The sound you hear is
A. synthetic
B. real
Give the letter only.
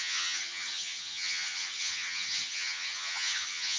A